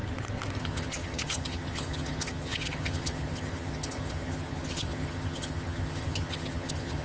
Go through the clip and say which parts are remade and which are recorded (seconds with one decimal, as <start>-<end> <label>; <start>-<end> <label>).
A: 0.0-0.6 recorded; 0.6-7.0 remade